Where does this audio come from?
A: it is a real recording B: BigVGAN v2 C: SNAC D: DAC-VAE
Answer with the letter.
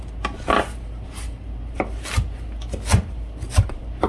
A